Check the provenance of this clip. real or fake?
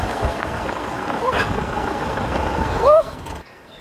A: fake